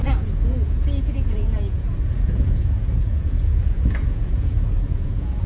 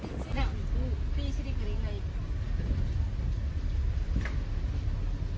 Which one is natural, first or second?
second